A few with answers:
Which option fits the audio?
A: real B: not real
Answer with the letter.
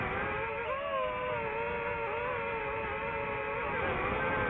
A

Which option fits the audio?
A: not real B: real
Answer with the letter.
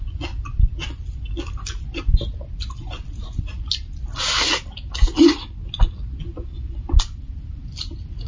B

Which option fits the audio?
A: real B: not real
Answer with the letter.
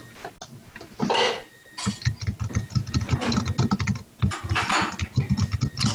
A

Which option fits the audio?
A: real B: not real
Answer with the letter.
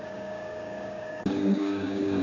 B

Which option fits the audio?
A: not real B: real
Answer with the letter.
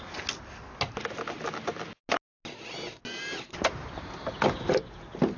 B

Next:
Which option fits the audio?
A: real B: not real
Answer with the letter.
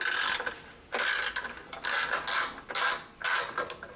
A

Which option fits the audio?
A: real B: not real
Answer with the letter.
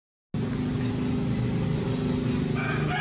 A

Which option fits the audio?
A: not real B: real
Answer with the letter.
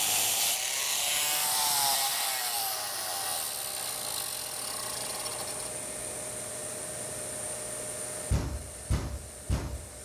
B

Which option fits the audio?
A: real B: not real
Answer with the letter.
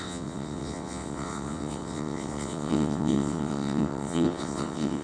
B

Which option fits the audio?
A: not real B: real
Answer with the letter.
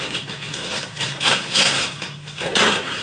A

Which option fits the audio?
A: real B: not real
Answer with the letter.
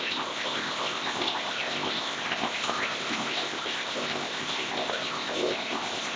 B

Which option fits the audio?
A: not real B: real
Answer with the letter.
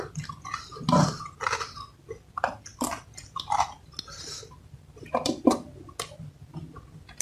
B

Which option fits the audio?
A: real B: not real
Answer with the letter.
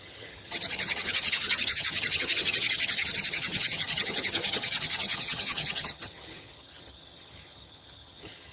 B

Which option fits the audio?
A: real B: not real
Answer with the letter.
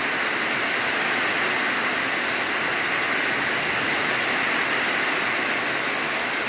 A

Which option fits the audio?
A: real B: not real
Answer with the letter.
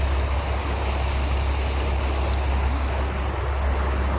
A